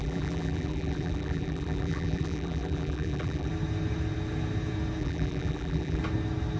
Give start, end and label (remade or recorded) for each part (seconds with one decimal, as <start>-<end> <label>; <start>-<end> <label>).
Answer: 0.0-3.5 remade; 3.5-5.0 recorded; 5.0-6.0 remade; 6.0-6.6 recorded